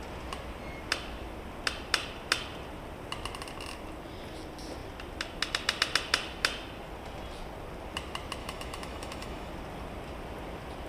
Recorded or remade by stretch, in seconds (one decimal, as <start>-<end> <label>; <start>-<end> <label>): 0.0-8.4 recorded; 8.4-9.5 remade; 9.5-10.9 recorded